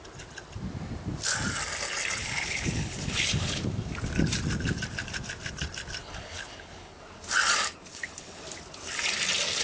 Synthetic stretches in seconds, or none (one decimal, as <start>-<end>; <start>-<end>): 2.2-3.6; 6.0-7.0; 7.9-8.4